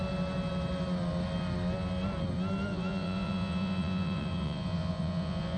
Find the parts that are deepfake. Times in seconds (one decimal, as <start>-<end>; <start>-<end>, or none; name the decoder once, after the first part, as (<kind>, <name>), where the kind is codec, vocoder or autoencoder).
2.7-5.6 (vocoder, Vocos)